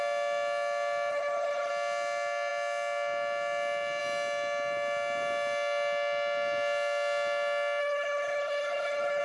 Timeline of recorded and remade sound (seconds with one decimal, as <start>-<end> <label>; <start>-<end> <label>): 0.0-1.1 recorded; 1.1-1.7 remade; 1.7-7.8 recorded; 7.8-9.2 remade